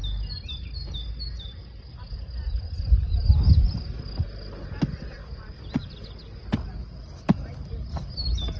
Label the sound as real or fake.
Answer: real